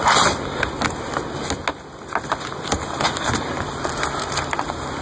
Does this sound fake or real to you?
real